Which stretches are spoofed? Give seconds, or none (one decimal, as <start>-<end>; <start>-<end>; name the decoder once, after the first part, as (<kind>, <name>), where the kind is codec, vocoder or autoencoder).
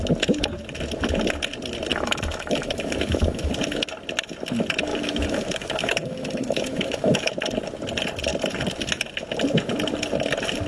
1.9-3.5 (autoencoder, DAC-VAE); 4.9-7.3